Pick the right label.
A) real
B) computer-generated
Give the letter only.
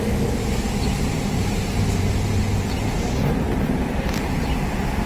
B